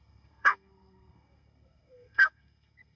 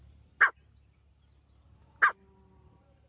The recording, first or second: second